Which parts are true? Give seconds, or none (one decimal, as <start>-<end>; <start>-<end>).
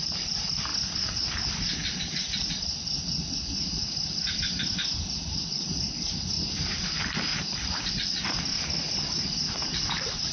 0.7-5.5; 8.5-9.5